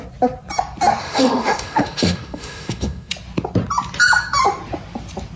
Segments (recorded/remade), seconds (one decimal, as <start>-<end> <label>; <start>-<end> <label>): 0.0-1.0 recorded; 1.0-3.1 remade; 3.1-5.4 recorded